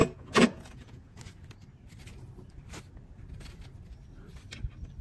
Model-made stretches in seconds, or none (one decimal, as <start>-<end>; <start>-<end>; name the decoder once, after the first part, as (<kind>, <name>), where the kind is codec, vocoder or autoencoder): 0.0-1.2 (vocoder, Vocos)